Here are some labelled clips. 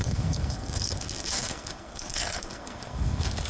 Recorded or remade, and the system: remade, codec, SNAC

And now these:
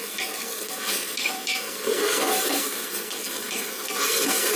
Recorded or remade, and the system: remade, codec, SNAC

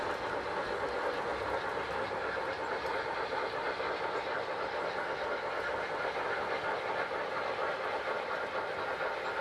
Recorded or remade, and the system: recorded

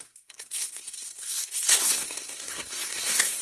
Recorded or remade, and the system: remade, codec, SNAC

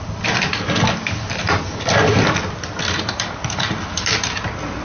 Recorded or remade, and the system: recorded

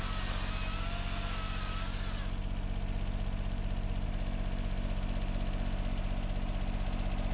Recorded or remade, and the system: recorded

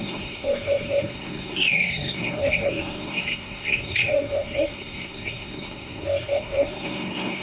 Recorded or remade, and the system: remade, codec, SNAC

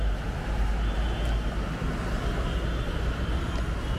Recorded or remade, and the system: recorded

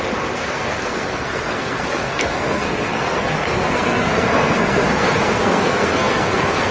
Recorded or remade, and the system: remade, codec, SNAC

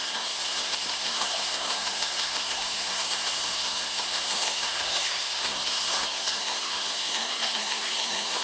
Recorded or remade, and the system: remade, codec, SNAC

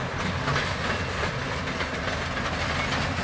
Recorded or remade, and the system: recorded